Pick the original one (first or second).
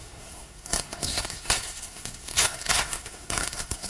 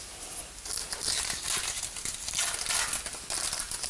second